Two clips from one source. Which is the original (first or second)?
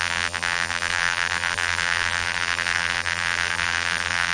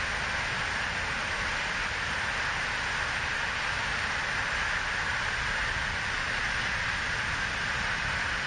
second